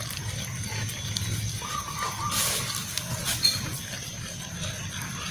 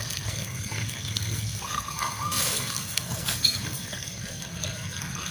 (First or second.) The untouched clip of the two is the first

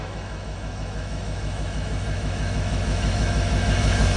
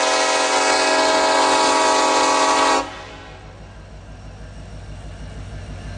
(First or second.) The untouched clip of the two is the second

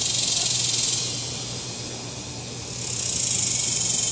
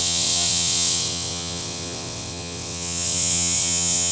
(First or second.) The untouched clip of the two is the first